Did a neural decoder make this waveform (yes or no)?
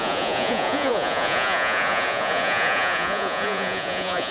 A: yes